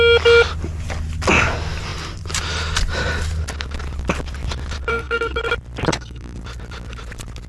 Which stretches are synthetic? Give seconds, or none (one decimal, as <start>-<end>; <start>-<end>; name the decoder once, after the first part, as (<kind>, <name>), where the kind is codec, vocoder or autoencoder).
4.9-5.4 (codec, SNAC); 5.9-6.4